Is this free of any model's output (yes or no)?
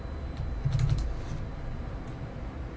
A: yes